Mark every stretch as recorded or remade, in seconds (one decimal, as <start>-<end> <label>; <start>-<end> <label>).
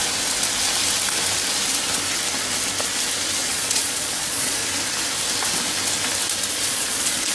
0.0-3.5 recorded; 3.5-4.6 remade; 4.6-6.5 recorded; 6.5-7.3 remade